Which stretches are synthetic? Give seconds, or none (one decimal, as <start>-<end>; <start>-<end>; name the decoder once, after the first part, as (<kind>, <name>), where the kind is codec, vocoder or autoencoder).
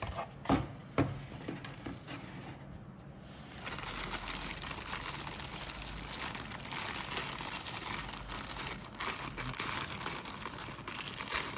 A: none